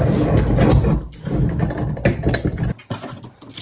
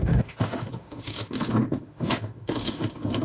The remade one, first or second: second